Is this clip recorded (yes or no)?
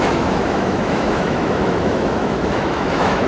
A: no